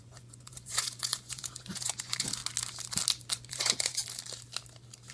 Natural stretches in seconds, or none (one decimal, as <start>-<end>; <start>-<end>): 2.4-3.5; 4.0-5.1